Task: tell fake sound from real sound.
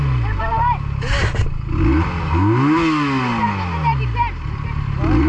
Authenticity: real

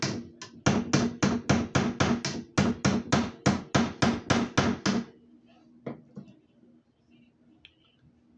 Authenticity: real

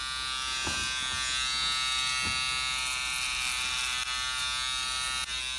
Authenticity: real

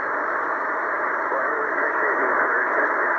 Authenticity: fake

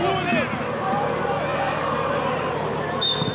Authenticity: real